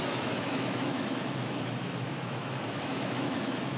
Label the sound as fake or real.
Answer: fake